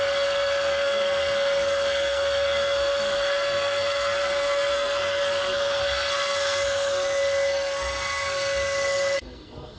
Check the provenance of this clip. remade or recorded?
remade